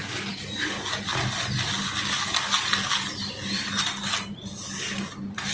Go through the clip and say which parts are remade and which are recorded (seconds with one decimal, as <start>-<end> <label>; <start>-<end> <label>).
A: 0.0-5.5 recorded